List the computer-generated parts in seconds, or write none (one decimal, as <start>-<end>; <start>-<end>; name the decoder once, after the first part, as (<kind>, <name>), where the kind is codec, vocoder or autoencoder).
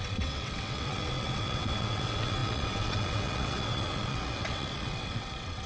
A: 0.0-5.7 (vocoder, WaveNeXt)